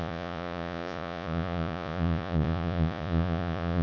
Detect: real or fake fake